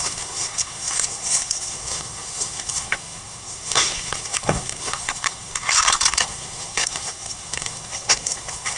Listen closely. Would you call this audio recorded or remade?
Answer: remade